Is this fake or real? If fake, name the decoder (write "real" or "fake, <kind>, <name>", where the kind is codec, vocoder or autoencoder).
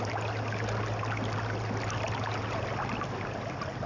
real